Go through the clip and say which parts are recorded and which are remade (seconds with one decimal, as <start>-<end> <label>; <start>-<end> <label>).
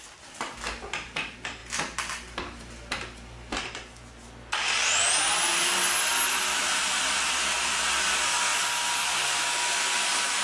0.0-10.4 recorded